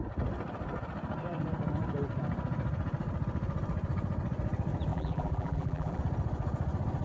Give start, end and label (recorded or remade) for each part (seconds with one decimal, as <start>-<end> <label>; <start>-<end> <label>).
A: 0.0-4.9 recorded; 4.9-6.0 remade; 6.0-7.0 recorded